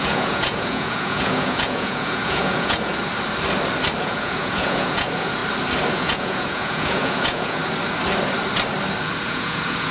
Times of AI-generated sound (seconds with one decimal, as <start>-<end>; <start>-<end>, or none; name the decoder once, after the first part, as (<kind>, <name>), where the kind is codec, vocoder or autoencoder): 0.0-2.9 (vocoder, Vocos); 4.0-5.4; 5.9-7.6; 9.2-9.9